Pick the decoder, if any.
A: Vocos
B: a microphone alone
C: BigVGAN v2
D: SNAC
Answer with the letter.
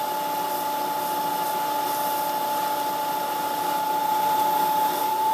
B